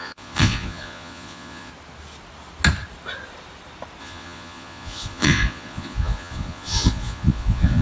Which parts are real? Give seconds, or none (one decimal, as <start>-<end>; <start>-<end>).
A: 1.7-4.0